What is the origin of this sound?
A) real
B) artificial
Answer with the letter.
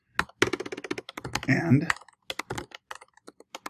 A